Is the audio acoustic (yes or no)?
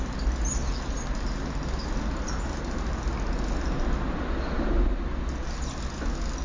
yes